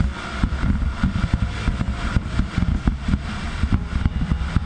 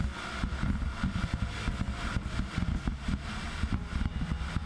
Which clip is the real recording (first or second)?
second